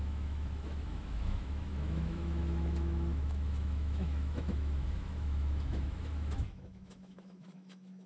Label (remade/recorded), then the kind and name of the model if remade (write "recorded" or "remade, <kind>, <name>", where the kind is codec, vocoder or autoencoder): remade, autoencoder, DAC-VAE